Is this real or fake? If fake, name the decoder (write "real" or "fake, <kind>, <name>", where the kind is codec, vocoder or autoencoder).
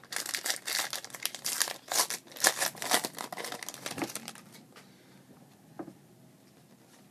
real